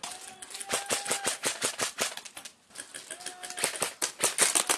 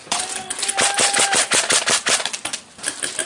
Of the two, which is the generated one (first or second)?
second